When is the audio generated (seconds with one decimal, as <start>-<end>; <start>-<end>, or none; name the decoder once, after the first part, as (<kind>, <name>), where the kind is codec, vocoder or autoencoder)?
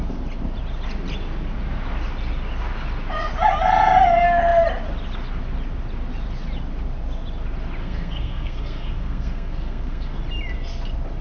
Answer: 7.8-10.2 (codec, SNAC)